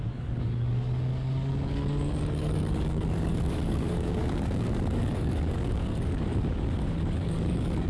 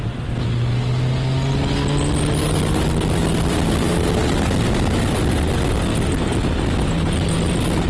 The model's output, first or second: first